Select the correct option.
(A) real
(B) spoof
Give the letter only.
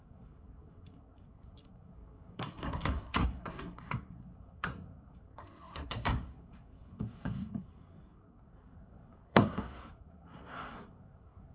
B